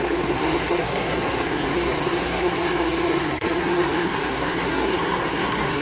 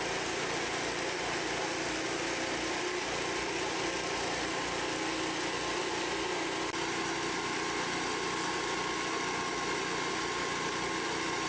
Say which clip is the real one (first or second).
second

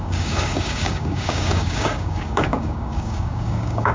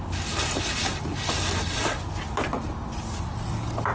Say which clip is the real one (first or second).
second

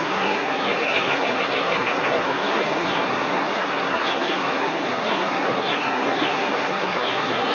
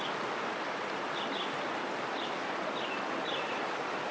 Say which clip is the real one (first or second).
second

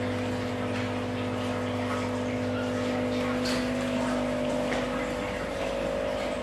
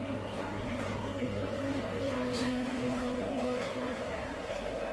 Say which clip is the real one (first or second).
first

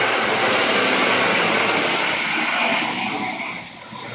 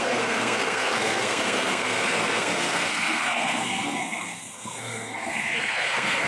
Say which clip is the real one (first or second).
first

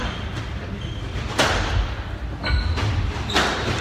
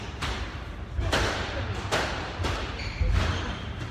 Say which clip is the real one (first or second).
first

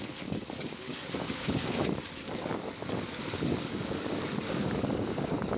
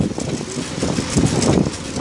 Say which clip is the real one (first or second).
second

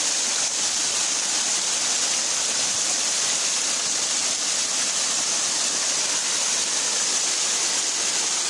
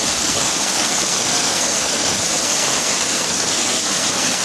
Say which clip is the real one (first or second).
first